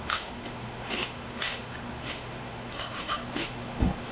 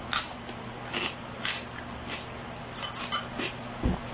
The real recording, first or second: second